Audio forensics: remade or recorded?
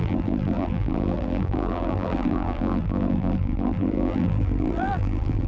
remade